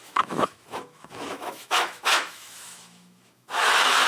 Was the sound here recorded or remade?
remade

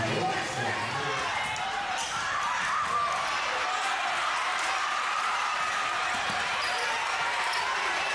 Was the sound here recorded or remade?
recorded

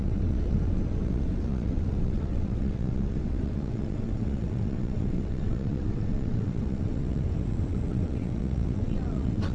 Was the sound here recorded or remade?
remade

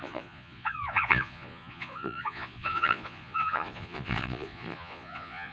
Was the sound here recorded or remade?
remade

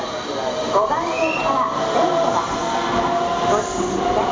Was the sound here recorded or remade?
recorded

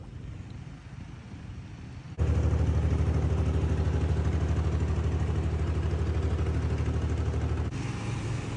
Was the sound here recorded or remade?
recorded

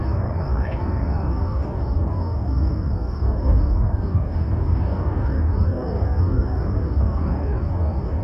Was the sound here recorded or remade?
remade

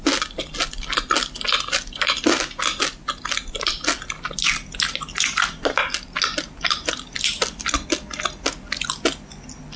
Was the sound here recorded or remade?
recorded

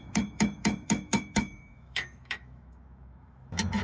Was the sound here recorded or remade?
remade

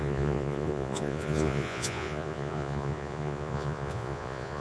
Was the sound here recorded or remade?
remade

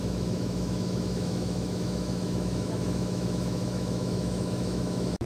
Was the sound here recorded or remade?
remade